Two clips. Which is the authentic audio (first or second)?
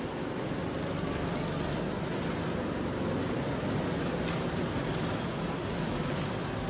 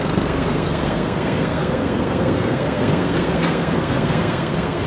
first